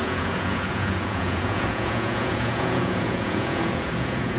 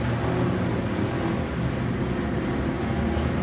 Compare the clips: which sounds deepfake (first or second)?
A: first